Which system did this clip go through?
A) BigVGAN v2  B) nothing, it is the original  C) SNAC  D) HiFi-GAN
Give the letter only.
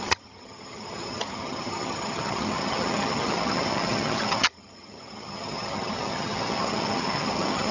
D